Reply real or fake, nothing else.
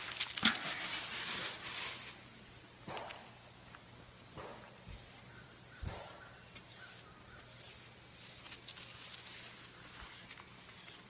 real